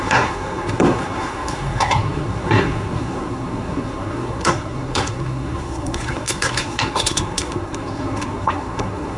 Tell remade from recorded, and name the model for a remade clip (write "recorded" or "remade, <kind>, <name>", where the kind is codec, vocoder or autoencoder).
remade, codec, SNAC